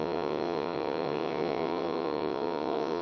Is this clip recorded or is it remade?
remade